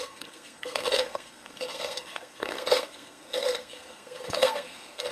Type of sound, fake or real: fake